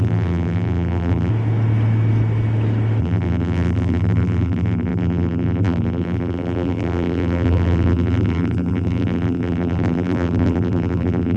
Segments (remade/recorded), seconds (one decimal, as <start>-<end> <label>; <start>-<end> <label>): 0.0-1.3 remade; 1.3-3.0 recorded; 3.0-11.4 remade